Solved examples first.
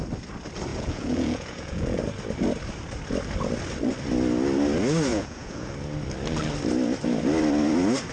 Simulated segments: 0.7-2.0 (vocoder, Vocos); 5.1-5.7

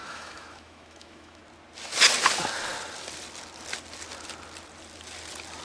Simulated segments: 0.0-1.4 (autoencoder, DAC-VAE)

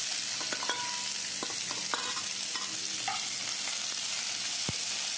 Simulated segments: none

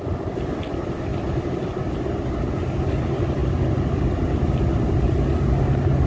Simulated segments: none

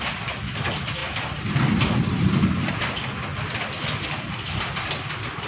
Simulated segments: none